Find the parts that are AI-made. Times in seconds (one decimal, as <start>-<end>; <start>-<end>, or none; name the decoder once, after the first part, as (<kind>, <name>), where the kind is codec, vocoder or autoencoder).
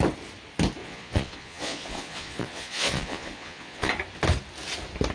0.8-3.9 (vocoder, Vocos)